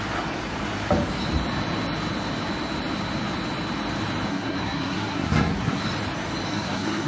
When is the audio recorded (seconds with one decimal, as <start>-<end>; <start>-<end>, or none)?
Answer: 0.0-4.3; 5.8-6.5